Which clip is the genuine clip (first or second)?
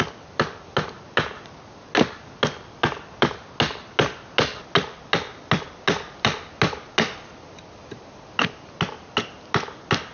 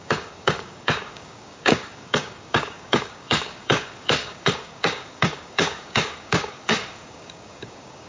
first